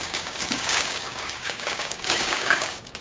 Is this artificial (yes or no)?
yes